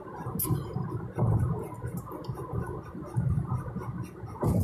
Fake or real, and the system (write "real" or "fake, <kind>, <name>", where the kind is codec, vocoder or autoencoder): real